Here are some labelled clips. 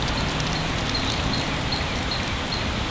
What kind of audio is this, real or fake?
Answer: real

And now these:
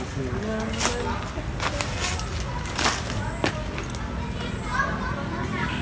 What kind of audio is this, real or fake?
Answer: real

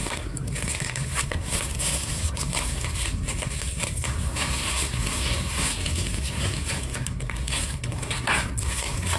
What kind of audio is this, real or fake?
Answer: fake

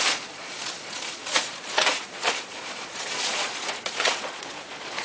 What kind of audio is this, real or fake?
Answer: fake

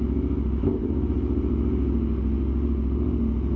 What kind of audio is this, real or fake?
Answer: real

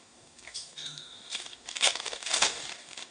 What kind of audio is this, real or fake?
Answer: fake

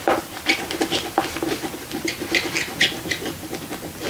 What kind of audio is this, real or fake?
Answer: real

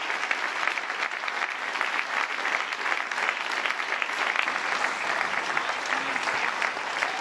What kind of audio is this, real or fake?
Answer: real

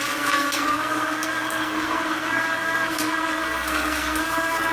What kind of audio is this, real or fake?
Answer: fake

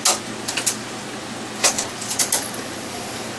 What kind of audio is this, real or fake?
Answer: real